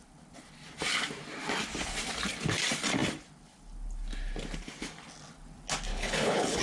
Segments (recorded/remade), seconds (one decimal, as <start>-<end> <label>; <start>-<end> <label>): 0.0-5.9 recorded; 5.9-6.6 remade